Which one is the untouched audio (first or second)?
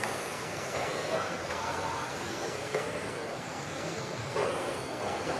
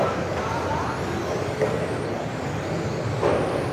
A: second